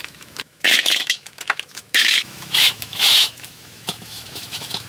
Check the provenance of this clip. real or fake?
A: fake